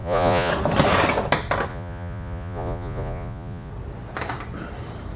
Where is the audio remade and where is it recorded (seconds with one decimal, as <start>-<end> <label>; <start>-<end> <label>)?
0.0-0.5 remade; 0.5-1.7 recorded; 1.7-3.7 remade; 3.7-5.2 recorded